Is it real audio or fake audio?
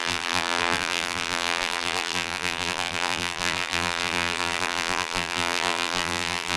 fake